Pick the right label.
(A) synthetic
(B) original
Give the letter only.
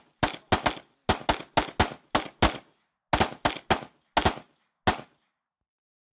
B